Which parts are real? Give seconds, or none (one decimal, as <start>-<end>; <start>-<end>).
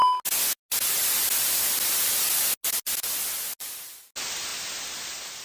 0.0-5.4